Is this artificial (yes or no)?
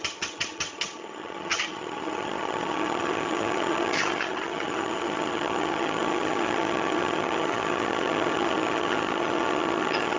yes